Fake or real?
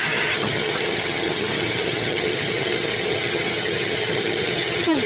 fake